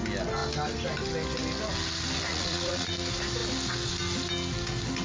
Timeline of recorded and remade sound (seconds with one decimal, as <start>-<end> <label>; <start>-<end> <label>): 0.0-2.3 recorded; 2.3-2.9 remade; 2.9-5.0 recorded